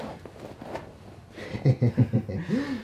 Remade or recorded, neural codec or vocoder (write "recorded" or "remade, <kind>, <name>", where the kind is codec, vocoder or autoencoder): recorded